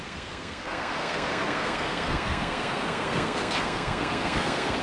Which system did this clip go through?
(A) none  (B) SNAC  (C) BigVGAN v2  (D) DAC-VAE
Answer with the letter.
B